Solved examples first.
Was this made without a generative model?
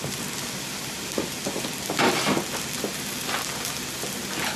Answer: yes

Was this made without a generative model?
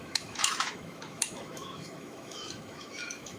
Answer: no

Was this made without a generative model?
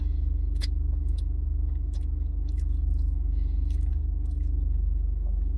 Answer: no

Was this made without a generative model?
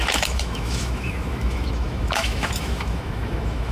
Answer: no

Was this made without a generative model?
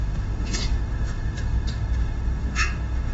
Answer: no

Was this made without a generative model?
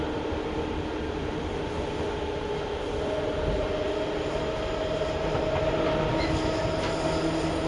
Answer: yes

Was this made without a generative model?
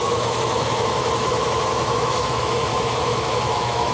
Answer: no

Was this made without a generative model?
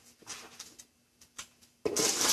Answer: yes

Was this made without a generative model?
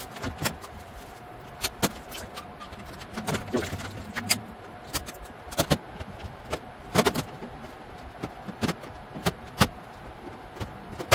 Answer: yes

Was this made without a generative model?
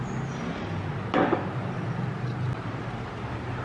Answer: yes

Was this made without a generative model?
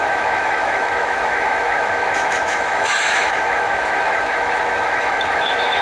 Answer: no